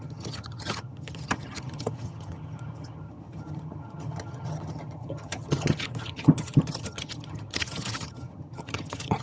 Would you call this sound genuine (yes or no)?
no